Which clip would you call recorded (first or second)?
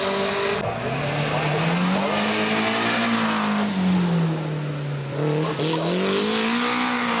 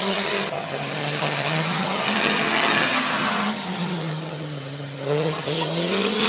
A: first